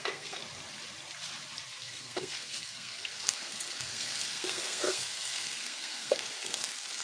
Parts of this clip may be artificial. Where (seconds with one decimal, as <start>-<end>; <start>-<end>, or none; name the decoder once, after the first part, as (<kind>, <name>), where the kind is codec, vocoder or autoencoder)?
0.0-0.4 (codec, SNAC); 1.7-7.0

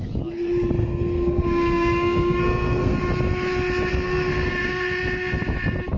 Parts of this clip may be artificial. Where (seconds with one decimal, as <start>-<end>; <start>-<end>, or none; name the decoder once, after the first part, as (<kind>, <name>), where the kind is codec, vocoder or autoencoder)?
0.8-3.0 (codec, SNAC); 3.9-4.5